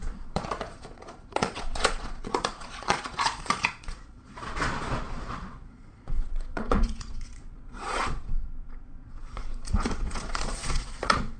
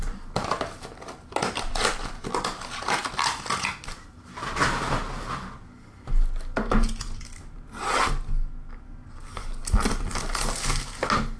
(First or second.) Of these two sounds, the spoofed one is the first